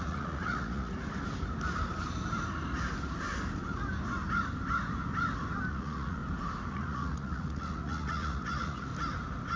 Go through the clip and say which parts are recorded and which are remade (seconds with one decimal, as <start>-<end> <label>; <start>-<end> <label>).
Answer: 0.0-0.9 remade; 0.9-5.7 recorded; 5.7-6.2 remade; 6.2-6.7 recorded; 6.7-8.9 remade; 8.9-9.6 recorded